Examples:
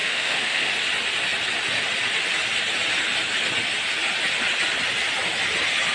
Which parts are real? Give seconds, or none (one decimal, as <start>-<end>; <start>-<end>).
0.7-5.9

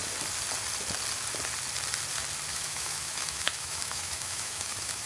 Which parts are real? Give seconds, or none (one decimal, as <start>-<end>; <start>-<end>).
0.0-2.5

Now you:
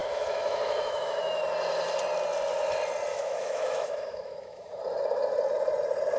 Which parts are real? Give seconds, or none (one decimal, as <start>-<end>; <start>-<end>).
1.4-3.1; 4.8-6.2

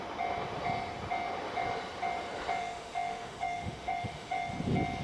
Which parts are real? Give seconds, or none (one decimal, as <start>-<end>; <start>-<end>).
0.0-2.6; 4.5-5.0

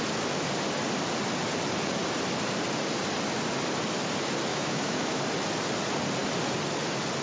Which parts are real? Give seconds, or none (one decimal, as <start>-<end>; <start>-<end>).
0.0-4.5; 5.2-7.2

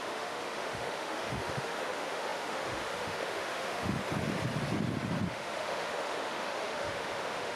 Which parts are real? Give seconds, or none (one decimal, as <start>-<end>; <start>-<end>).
4.0-5.3